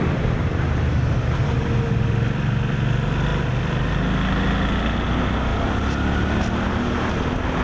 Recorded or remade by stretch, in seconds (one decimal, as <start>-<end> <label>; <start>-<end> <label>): 0.0-7.6 recorded